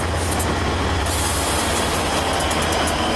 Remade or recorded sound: recorded